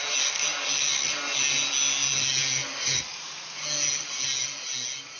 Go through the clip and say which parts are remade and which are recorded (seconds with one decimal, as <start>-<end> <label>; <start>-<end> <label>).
0.0-3.1 recorded; 3.1-3.6 remade; 3.6-5.2 recorded